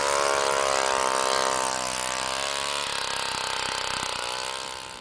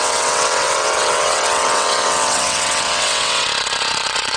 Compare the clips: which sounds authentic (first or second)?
first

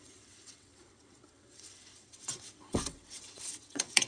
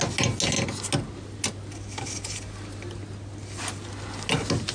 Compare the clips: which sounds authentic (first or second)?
second